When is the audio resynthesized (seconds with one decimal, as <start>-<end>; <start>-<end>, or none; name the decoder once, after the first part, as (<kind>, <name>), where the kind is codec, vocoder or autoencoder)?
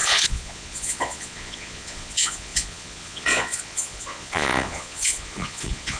0.0-6.0 (vocoder, Vocos)